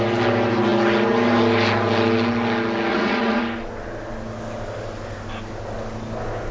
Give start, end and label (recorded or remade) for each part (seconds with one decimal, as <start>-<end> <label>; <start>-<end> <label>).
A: 0.0-2.9 recorded; 2.9-3.4 remade; 3.4-6.5 recorded